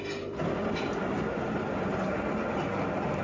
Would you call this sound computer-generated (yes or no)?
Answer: no